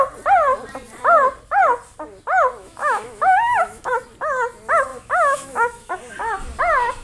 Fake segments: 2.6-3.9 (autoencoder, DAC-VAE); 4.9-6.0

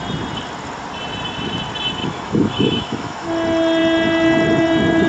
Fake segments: 2.0-3.3 (autoencoder, DAC-VAE)

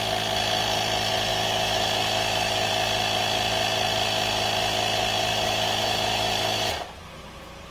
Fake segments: 1.3-2.7 (autoencoder, DAC-VAE); 5.3-6.7

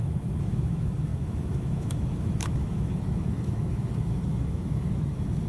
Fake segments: 0.0-5.5 (autoencoder, DAC-VAE)

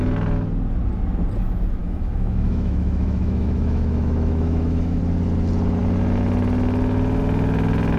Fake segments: 1.8-5.0 (autoencoder, DAC-VAE)

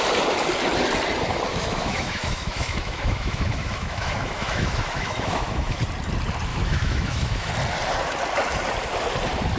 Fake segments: 1.5-5.8 (autoencoder, DAC-VAE); 6.5-7.5